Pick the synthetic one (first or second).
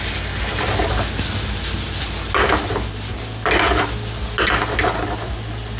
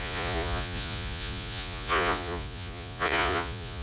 second